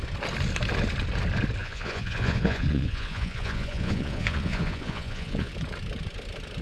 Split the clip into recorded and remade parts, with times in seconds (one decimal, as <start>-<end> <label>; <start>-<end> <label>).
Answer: 0.0-1.6 recorded; 1.6-5.5 remade; 5.5-6.6 recorded